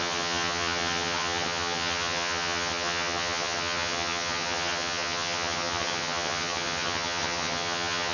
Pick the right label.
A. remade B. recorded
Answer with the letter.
A